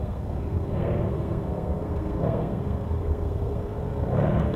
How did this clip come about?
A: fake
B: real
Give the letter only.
A